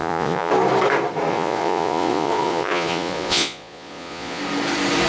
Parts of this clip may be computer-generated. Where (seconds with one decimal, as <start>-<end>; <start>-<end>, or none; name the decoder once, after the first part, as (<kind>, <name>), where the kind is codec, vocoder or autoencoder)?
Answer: 0.0-0.5 (vocoder, Vocos); 1.3-4.4